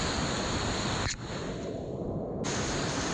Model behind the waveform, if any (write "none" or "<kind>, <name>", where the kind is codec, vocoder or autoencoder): none